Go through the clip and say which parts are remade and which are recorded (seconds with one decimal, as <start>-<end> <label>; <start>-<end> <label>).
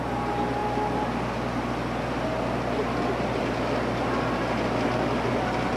0.0-5.8 recorded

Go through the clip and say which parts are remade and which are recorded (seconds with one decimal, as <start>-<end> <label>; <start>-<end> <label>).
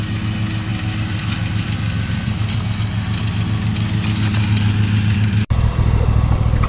0.0-0.7 recorded; 0.7-2.6 remade; 2.6-4.3 recorded; 4.3-6.7 remade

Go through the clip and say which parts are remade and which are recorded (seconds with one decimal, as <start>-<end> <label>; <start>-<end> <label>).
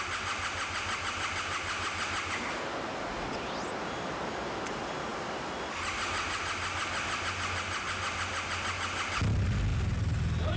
0.0-10.6 recorded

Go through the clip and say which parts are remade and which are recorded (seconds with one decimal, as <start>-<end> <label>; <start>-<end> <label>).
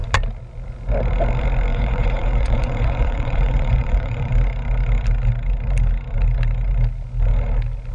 0.0-1.7 recorded; 1.7-4.3 remade; 4.3-7.9 recorded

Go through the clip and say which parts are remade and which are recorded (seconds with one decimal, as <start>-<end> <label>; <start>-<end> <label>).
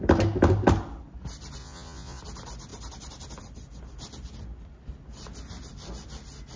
0.0-1.6 recorded; 1.6-2.2 remade; 2.2-6.6 recorded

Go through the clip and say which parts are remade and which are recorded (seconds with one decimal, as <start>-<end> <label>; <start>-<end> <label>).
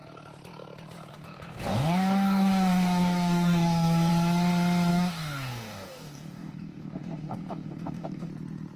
0.0-1.1 recorded; 1.1-4.1 remade; 4.1-4.9 recorded; 4.9-8.3 remade; 8.3-8.8 recorded